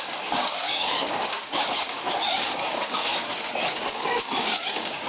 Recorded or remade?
remade